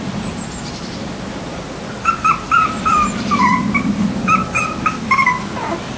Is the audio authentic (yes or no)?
yes